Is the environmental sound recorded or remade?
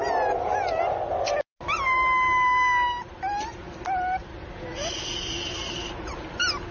recorded